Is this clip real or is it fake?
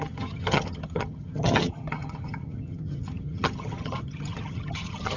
fake